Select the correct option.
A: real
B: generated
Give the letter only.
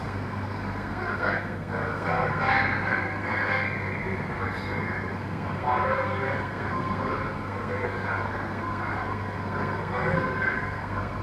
B